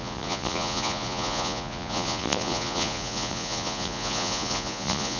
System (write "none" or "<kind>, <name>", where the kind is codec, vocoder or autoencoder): vocoder, Vocos